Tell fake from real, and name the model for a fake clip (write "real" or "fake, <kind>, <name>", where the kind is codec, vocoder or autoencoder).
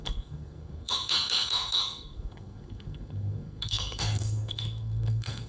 fake, codec, SNAC